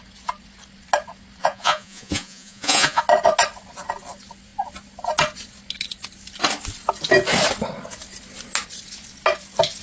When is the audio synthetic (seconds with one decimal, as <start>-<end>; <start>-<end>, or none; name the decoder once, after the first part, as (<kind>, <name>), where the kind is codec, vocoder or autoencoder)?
1.4-3.0 (vocoder, Vocos)

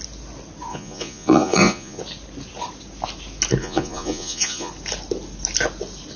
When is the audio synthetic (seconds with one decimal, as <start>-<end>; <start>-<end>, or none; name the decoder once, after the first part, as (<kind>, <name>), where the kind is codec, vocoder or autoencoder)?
0.7-2.0 (vocoder, Vocos); 3.6-4.7